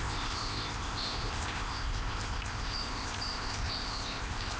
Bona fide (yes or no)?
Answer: no